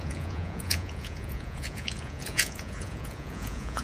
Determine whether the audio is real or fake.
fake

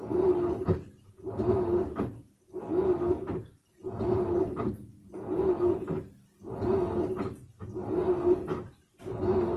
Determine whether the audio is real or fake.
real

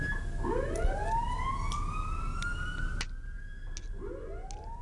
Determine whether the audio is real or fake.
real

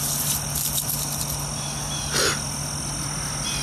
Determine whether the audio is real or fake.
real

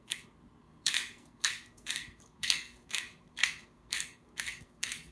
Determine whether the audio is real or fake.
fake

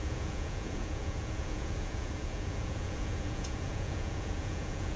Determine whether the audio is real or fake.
fake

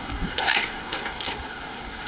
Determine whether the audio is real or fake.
fake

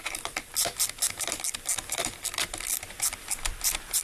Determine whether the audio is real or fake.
fake